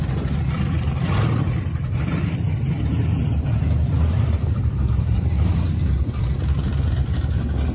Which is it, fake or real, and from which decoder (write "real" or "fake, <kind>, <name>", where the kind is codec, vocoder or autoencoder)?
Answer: fake, vocoder, BigVGAN v2